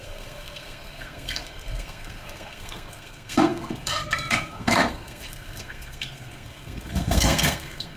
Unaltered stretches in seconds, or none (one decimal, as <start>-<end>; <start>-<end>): none